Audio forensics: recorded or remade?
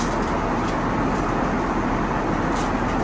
recorded